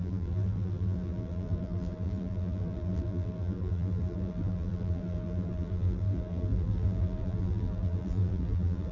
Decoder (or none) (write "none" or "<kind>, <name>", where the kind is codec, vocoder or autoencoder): vocoder, BigVGAN v2